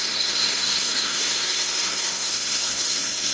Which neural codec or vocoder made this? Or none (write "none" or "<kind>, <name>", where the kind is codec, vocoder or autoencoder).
codec, SNAC